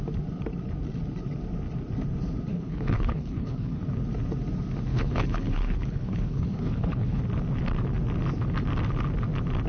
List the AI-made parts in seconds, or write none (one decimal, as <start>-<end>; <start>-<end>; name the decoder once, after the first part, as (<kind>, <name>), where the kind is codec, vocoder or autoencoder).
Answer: 2.5-3.8 (codec, HILCodec); 4.9-7.2